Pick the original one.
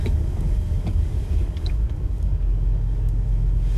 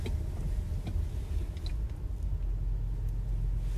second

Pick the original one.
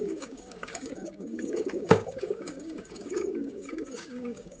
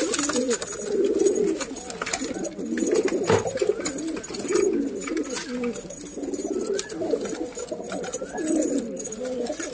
second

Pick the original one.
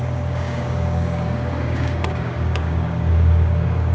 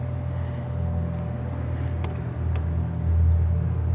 second